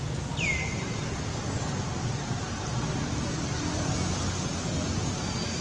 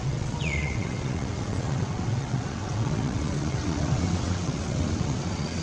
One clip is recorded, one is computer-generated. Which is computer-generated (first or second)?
second